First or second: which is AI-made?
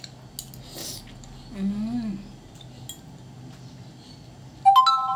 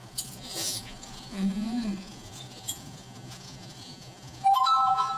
second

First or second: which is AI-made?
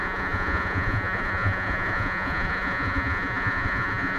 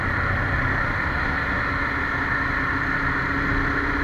first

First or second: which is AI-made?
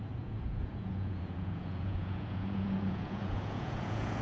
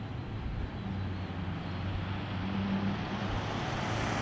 first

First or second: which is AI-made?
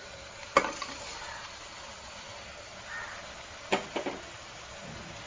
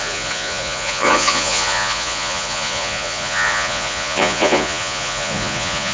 second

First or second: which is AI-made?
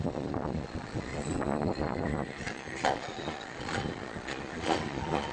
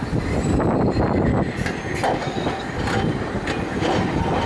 first